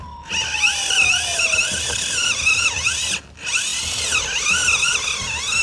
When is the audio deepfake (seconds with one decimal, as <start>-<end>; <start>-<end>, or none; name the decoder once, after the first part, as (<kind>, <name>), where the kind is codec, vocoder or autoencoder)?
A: none